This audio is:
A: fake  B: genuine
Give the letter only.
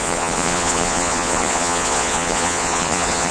A